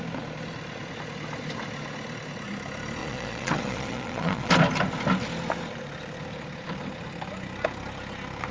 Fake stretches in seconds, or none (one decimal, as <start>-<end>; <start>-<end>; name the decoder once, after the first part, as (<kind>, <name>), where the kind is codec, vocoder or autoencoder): 3.0-4.5 (vocoder, Vocos)